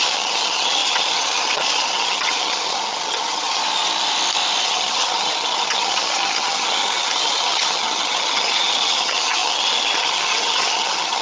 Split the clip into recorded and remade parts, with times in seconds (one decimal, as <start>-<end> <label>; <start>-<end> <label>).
0.0-3.6 remade; 3.6-4.6 recorded; 4.6-11.2 remade